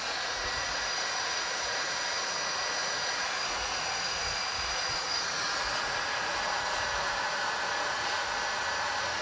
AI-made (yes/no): yes